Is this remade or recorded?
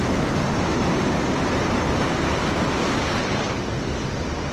recorded